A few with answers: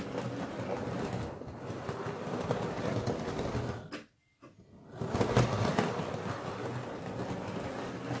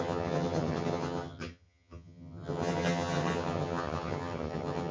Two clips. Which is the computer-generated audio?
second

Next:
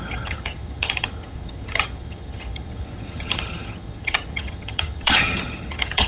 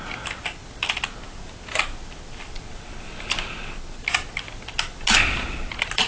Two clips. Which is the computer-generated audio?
first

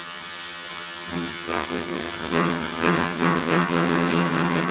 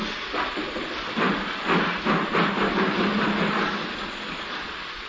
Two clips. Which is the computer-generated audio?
first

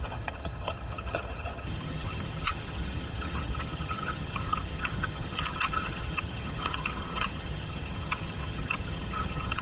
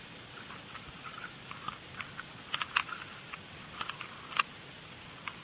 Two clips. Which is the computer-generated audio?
first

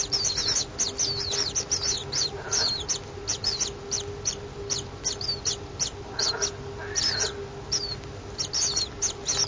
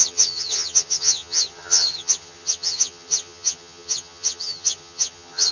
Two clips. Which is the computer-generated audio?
second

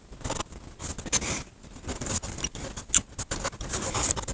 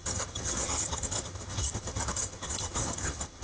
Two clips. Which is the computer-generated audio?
second